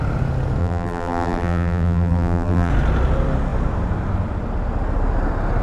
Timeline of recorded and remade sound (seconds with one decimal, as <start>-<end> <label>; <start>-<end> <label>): 0.0-0.6 recorded; 0.6-2.7 remade; 2.7-5.6 recorded